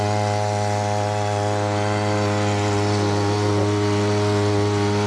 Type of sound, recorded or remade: recorded